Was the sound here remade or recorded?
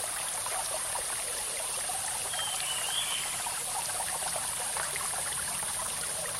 remade